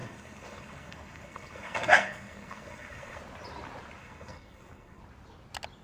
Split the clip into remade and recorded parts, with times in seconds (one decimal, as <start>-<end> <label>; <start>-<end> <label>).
0.0-3.2 remade; 3.2-4.0 recorded; 4.0-5.0 remade; 5.0-5.8 recorded